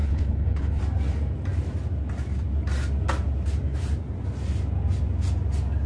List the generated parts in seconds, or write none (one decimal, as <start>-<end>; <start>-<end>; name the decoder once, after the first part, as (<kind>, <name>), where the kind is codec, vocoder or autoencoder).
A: 0.0-0.8 (codec, HILCodec)